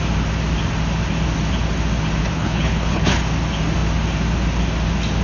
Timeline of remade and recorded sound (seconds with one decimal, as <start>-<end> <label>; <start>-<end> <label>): 0.0-2.2 recorded; 2.2-3.2 remade; 3.2-5.2 recorded

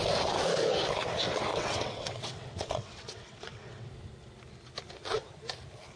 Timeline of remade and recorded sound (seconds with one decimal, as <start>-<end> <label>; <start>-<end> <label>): 0.0-1.5 recorded; 1.5-3.9 remade; 3.9-6.0 recorded